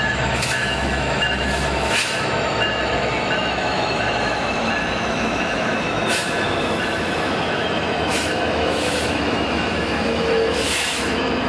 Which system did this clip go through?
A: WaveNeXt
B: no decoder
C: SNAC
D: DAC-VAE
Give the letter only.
D